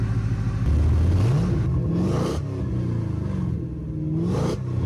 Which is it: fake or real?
real